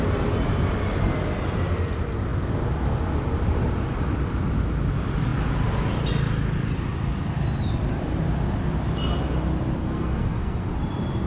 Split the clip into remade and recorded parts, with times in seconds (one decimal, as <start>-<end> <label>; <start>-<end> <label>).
0.0-9.8 recorded; 9.8-10.7 remade; 10.7-11.3 recorded